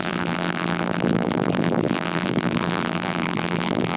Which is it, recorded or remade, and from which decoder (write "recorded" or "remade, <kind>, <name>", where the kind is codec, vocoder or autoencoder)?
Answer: remade, vocoder, BigVGAN v2